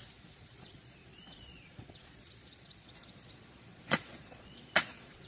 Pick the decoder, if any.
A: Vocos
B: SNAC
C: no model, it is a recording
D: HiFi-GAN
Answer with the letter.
A